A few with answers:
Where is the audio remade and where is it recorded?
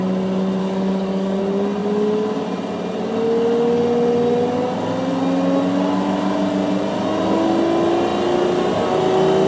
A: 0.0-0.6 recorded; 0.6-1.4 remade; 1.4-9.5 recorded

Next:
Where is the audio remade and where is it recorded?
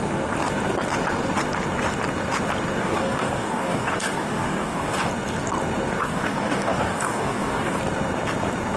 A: 0.0-2.8 recorded; 2.8-5.1 remade; 5.1-6.0 recorded; 6.0-7.8 remade; 7.8-8.8 recorded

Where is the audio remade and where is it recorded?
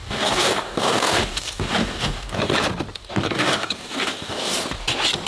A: 0.0-2.5 remade; 2.5-3.1 recorded; 3.1-4.5 remade; 4.5-5.3 recorded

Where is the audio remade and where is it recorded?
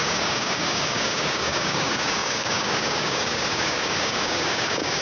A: 0.0-5.0 remade